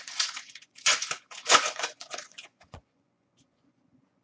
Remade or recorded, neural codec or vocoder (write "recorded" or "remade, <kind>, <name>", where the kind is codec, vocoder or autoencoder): remade, vocoder, Vocos